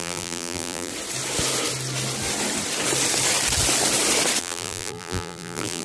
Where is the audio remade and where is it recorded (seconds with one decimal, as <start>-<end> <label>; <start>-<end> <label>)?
0.0-0.9 remade; 0.9-4.4 recorded; 4.4-5.8 remade